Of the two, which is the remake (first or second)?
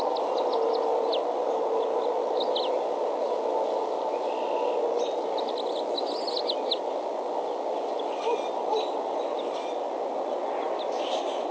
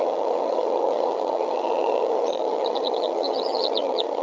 second